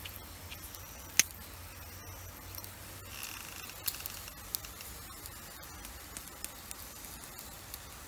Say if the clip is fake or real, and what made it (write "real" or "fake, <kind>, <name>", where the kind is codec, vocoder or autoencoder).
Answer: real